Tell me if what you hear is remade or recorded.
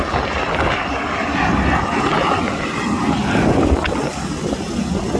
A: recorded